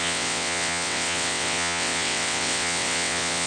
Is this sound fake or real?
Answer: fake